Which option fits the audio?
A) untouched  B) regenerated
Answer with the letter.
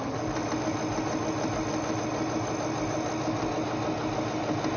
A